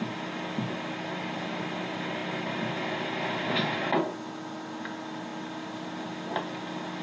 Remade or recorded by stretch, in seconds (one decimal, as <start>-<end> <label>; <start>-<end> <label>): 0.0-7.0 recorded